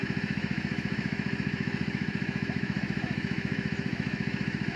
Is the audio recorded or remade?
remade